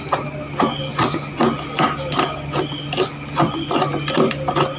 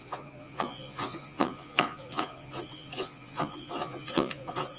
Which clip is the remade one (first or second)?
second